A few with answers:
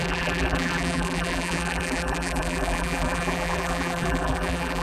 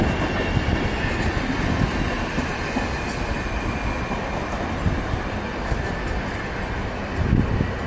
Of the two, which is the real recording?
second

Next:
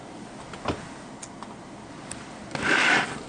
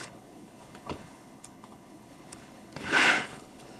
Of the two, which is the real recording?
first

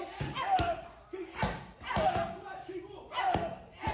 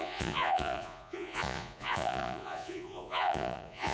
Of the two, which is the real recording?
first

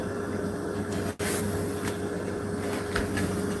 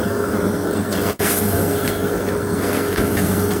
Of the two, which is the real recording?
first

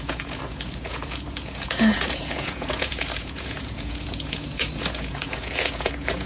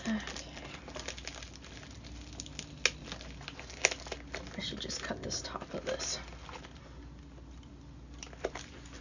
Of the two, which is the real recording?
second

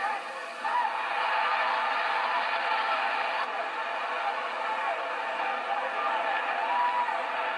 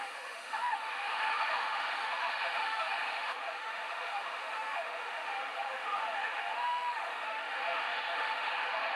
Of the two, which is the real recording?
first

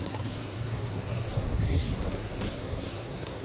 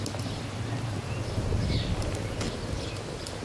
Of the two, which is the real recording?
second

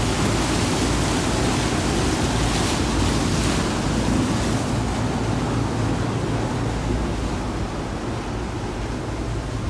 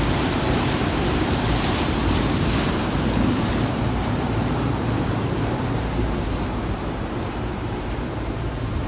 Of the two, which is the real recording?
first